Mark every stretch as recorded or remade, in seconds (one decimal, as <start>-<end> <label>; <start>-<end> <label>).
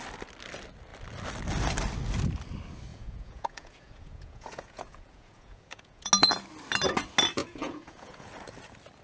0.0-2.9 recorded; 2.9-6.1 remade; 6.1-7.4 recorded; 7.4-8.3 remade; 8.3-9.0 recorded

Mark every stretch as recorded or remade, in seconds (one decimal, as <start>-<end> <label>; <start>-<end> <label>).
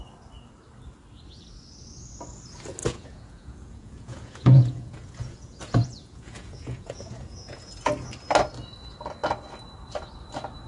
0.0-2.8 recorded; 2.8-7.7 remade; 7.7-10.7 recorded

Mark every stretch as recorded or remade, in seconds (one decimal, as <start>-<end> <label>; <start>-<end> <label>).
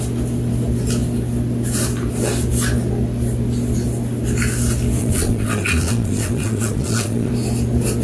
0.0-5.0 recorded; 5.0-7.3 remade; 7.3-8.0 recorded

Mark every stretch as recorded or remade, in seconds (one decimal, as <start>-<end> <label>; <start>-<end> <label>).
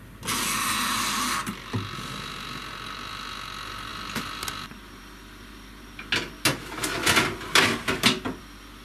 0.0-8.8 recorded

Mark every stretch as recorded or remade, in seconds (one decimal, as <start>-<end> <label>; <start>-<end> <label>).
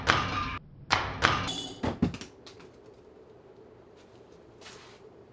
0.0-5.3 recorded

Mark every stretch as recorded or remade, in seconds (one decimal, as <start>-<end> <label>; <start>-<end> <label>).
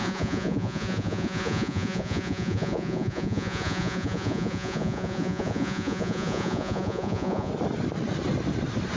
0.0-7.5 remade; 7.5-9.0 recorded